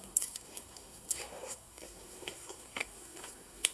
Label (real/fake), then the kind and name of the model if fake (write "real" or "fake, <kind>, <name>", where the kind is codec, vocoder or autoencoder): fake, codec, SNAC